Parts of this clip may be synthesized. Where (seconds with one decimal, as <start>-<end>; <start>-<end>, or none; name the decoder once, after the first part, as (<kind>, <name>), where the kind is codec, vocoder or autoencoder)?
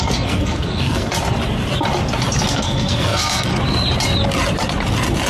0.0-1.1 (codec, SNAC); 2.5-3.5